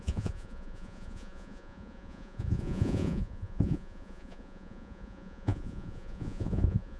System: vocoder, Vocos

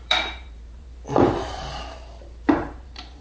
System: vocoder, BigVGAN v2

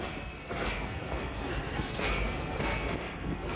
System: codec, SNAC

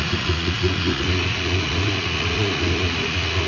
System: vocoder, Vocos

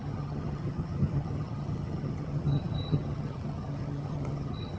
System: vocoder, HiFi-GAN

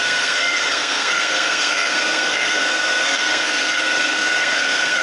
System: codec, SNAC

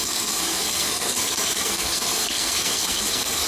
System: codec, SNAC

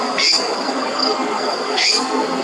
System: codec, SNAC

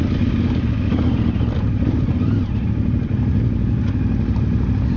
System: none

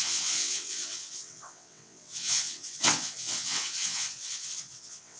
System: vocoder, WaveNeXt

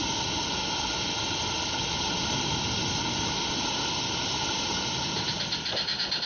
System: none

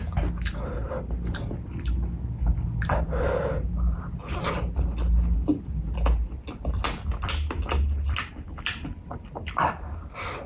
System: none